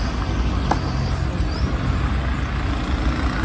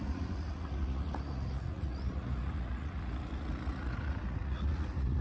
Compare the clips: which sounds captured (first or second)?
first